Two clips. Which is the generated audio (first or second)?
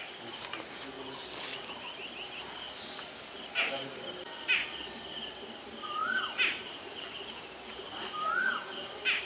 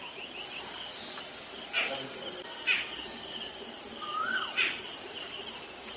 second